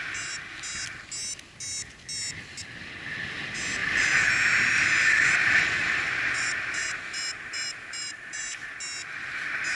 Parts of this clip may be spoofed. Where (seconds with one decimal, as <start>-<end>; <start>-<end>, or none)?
5.4-8.4